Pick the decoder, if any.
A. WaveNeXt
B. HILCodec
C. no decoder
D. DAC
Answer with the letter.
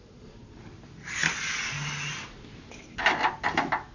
C